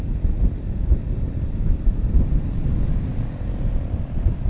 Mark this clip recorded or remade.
remade